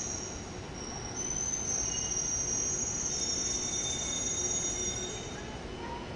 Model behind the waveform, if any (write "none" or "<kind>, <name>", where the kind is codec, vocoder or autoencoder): none